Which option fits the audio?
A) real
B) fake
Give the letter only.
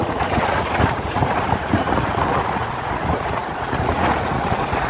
B